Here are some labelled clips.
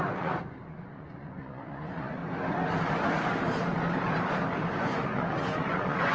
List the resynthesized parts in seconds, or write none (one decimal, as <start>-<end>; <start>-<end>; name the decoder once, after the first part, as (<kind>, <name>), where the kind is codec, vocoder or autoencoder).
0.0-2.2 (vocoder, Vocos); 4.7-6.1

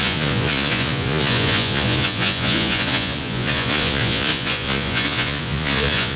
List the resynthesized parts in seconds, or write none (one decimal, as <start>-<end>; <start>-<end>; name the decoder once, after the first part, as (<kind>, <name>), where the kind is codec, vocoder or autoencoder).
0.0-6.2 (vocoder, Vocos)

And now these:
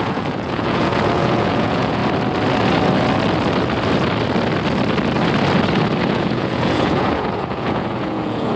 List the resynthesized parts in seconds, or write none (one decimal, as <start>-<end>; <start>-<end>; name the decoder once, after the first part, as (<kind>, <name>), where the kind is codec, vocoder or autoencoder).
0.0-2.0 (vocoder, Vocos); 6.1-8.6

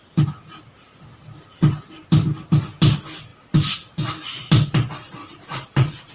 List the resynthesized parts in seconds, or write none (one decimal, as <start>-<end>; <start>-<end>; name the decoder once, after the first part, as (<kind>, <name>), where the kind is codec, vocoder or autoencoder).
5.2-6.1 (vocoder, Vocos)